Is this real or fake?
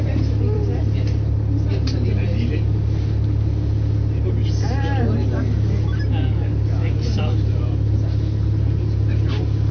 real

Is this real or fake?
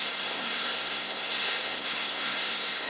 fake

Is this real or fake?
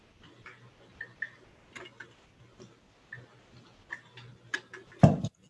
real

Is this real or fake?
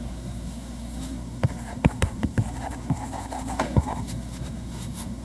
fake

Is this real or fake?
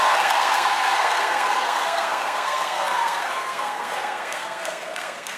fake